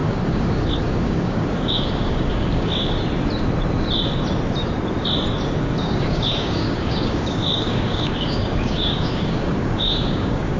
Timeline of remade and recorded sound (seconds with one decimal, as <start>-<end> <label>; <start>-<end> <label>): 0.0-2.9 remade; 2.9-5.8 recorded; 5.8-10.6 remade